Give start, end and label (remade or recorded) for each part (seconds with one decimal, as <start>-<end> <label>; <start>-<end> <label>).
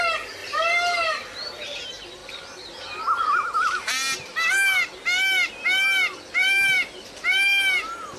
0.0-0.4 recorded; 0.4-1.8 remade; 1.8-6.4 recorded; 6.4-8.2 remade